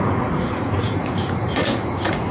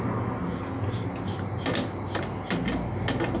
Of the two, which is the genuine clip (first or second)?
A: second